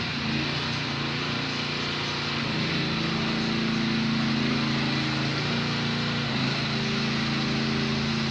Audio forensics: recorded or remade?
recorded